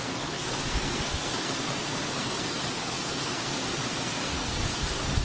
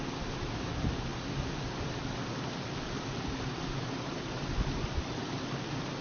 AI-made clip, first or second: first